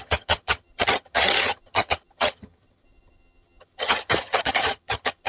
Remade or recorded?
remade